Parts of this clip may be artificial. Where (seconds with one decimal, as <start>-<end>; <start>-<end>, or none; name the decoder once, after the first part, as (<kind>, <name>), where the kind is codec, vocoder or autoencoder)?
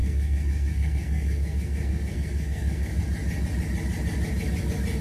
0.0-3.0 (codec, SNAC)